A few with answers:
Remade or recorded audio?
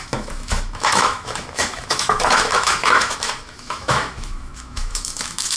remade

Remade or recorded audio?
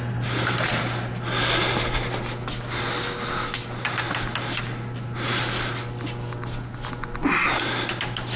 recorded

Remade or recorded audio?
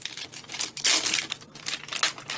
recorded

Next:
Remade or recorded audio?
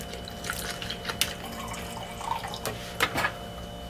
recorded